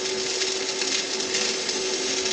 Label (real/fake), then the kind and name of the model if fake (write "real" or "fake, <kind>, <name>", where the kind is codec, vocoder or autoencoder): real